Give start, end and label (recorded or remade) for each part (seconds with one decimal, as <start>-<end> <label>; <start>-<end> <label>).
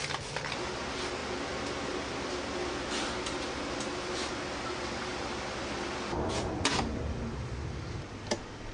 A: 0.0-8.7 recorded